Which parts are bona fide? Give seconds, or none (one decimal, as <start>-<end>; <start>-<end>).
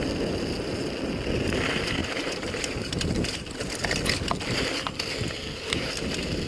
0.0-2.0; 3.7-6.5